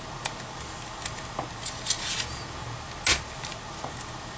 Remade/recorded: recorded